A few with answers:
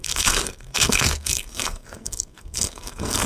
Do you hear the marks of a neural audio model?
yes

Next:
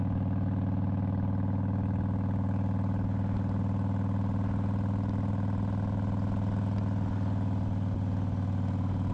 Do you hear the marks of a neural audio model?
no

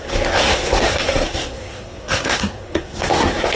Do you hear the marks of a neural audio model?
yes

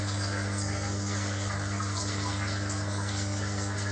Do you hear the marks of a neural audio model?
yes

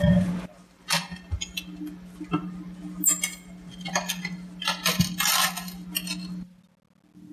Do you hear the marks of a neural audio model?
no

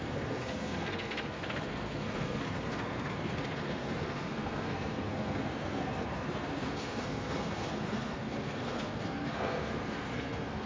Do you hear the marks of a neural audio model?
yes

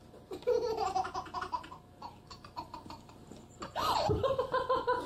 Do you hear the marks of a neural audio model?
no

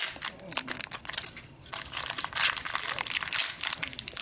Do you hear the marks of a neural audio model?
no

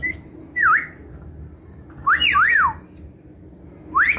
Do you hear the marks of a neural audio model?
no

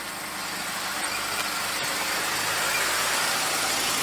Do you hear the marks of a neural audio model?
no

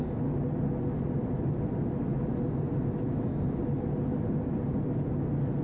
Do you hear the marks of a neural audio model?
no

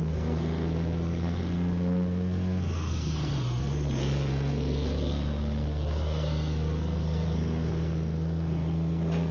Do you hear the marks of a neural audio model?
yes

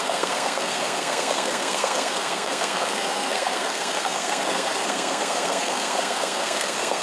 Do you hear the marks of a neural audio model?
yes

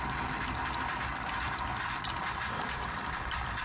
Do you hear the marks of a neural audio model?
no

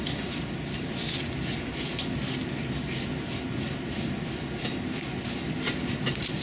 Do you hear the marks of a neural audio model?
no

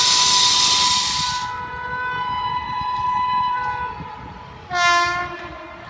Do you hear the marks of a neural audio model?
no